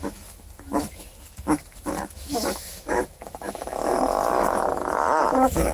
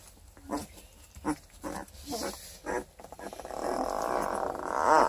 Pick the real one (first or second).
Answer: second